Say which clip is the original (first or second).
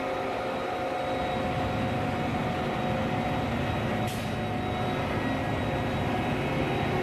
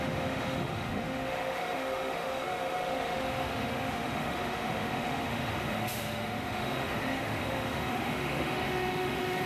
first